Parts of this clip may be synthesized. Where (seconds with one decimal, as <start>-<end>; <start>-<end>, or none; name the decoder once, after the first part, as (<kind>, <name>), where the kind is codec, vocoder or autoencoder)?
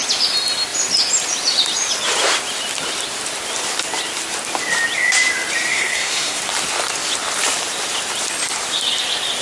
5.7-6.4 (codec, SNAC)